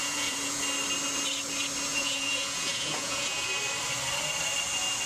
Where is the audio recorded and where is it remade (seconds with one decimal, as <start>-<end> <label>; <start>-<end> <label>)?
0.0-0.6 remade; 0.6-1.9 recorded; 1.9-3.5 remade; 3.5-5.1 recorded

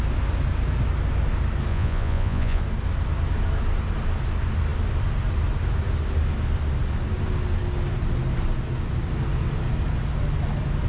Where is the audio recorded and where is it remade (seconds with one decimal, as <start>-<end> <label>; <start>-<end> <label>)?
0.0-1.7 recorded; 1.7-2.6 remade; 2.6-10.9 recorded

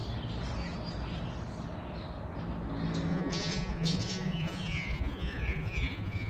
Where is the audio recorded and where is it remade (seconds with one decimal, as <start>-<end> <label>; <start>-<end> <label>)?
0.0-3.1 recorded; 3.1-6.3 remade

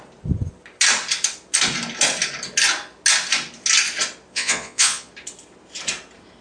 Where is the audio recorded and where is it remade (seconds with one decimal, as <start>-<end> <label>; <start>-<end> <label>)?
0.0-4.3 recorded; 4.3-5.1 remade; 5.1-6.4 recorded

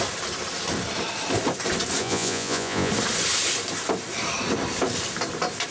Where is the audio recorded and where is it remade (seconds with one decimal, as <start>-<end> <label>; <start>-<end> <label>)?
0.0-2.0 recorded; 2.0-2.9 remade; 2.9-5.7 recorded

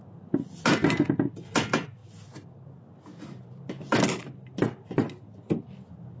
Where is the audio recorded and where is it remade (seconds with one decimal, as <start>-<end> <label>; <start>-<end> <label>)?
0.0-6.2 recorded

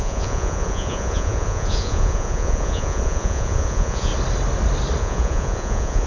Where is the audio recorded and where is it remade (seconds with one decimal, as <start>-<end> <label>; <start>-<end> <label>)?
0.0-4.1 remade; 4.1-5.0 recorded; 5.0-6.1 remade

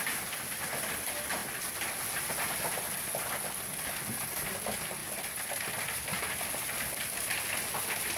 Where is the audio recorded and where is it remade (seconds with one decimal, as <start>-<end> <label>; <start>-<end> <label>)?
0.0-8.2 recorded